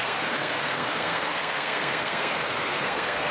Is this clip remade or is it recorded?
remade